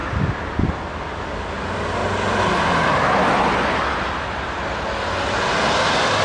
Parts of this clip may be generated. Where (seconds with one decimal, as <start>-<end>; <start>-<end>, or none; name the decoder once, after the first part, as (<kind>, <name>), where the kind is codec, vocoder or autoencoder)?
none